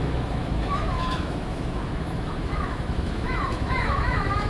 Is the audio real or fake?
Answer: fake